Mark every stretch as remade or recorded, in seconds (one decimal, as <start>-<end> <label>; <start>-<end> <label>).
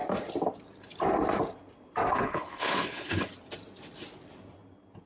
0.0-2.1 recorded; 2.1-3.3 remade; 3.3-5.1 recorded